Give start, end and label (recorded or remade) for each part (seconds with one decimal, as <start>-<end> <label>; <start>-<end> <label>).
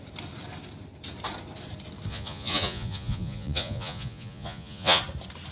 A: 0.0-2.1 recorded; 2.1-5.0 remade; 5.0-5.5 recorded